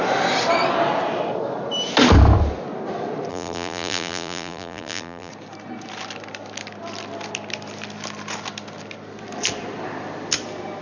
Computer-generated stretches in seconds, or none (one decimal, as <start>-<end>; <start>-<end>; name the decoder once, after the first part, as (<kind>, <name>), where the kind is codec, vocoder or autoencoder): 3.3-5.3 (vocoder, BigVGAN v2)